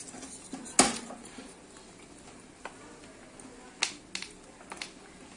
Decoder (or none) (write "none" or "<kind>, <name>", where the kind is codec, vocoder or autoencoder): none